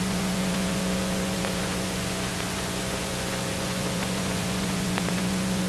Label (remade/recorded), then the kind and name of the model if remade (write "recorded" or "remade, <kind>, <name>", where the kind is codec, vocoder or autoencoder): remade, vocoder, Vocos